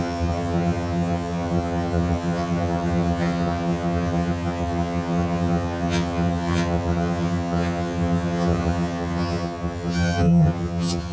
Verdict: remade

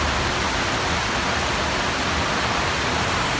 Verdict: recorded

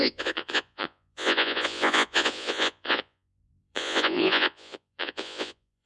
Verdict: remade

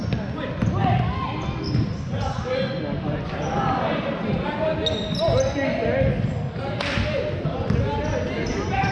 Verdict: recorded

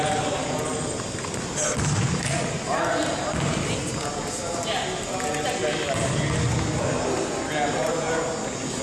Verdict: recorded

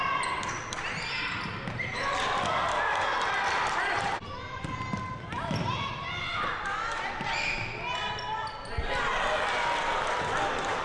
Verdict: recorded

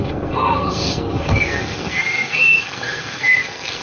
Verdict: remade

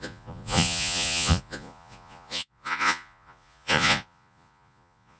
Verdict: remade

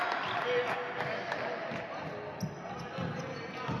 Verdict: recorded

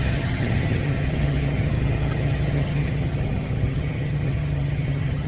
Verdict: remade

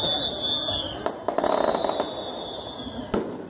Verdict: recorded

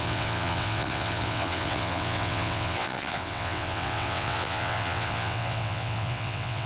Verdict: remade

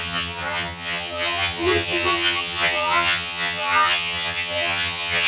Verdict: remade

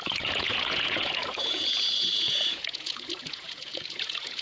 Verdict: remade